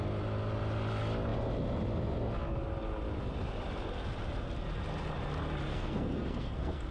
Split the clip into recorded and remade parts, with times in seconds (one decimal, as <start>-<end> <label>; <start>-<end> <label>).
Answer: 0.0-5.7 recorded; 5.7-6.9 remade